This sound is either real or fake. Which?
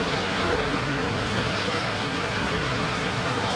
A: fake